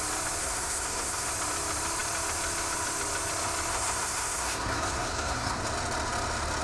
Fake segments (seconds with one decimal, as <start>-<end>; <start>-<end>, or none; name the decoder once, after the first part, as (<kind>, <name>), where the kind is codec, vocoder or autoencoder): 0.4-1.3 (codec, SNAC); 3.7-5.6